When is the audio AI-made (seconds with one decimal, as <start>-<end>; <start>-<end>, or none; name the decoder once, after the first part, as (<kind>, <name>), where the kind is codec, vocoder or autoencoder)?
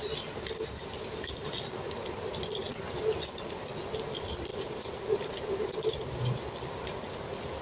none